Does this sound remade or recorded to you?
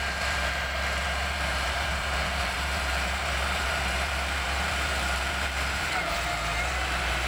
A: remade